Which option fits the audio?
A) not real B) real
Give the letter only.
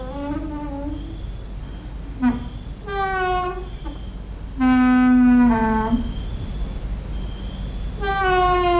B